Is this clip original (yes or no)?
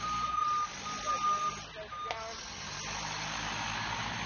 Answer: yes